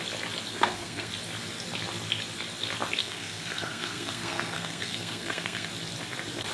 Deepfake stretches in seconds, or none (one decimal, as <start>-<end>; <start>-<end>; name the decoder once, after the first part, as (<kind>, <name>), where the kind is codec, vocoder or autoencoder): 0.5-1.1 (codec, SNAC); 3.0-5.7